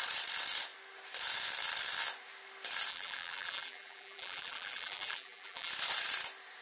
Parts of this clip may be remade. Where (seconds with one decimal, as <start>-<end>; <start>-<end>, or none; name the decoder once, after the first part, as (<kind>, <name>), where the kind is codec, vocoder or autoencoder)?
2.9-5.7 (vocoder, BigVGAN v2)